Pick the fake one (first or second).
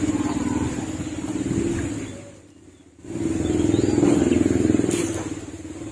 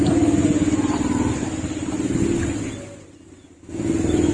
first